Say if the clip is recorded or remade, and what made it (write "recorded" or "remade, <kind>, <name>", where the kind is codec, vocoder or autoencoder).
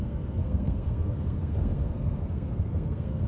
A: remade, codec, SNAC